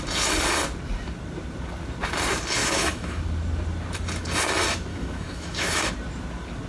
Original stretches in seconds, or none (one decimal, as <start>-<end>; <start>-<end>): 0.0-2.6; 3.2-4.9; 5.9-6.7